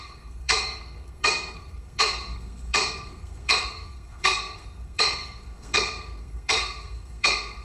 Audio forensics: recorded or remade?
remade